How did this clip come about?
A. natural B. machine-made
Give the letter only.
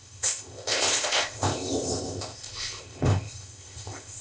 B